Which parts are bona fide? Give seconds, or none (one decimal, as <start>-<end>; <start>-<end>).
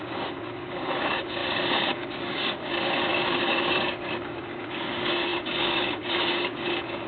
none